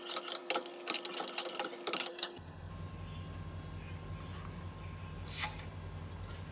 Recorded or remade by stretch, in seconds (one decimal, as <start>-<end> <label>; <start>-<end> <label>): 0.0-2.1 recorded; 2.1-2.7 remade; 2.7-6.5 recorded